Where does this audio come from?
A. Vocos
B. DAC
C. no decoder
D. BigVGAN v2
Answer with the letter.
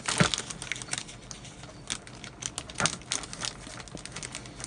C